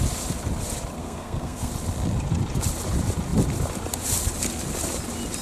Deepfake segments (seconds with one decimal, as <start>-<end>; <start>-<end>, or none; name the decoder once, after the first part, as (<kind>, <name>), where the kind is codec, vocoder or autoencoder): 1.0-1.7 (codec, SNAC)